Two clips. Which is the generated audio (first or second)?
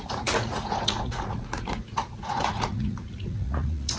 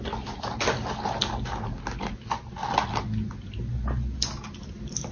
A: first